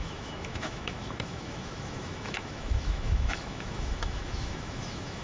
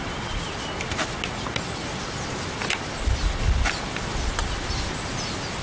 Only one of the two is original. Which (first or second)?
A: second